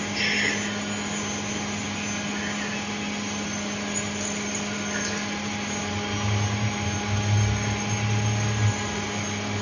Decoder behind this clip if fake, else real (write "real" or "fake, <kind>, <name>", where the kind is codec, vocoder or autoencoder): real